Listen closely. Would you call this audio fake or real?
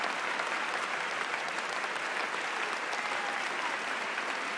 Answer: real